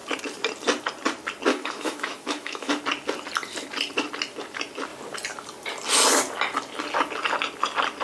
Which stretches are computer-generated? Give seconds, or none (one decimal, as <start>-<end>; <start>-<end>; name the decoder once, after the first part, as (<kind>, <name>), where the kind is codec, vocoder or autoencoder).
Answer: 1.5-2.8 (autoencoder, DAC-VAE)